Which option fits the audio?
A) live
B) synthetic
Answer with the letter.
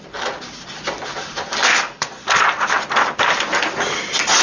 B